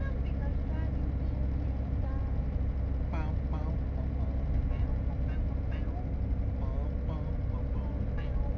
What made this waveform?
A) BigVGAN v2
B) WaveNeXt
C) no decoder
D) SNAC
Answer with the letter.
C